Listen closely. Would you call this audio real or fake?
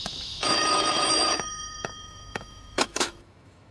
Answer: fake